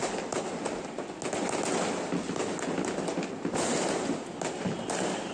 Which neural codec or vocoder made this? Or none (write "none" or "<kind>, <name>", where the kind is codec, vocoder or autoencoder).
none